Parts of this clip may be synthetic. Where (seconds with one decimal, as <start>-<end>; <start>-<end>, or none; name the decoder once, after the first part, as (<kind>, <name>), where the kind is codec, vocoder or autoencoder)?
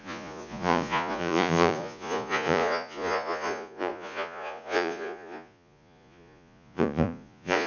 0.0-7.7 (vocoder, Vocos)